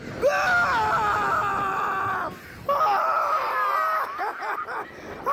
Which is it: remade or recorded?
recorded